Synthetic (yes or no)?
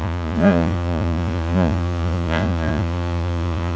yes